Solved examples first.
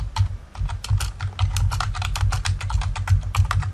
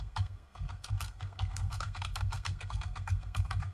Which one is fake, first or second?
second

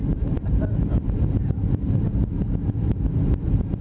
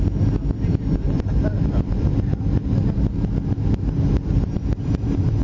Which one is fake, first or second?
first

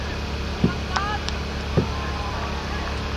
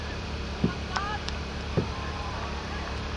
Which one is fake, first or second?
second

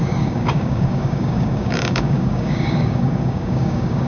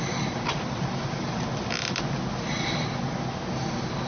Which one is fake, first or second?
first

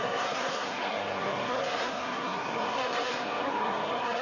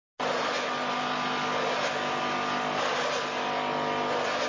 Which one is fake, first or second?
first